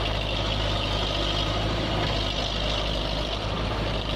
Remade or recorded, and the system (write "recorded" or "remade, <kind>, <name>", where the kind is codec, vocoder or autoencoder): recorded